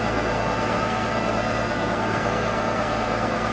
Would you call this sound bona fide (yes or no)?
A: no